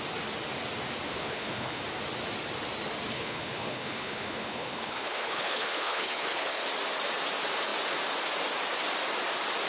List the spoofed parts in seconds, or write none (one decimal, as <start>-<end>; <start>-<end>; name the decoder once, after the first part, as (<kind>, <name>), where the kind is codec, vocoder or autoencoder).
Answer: 1.1-1.8 (codec, HILCodec); 3.1-6.6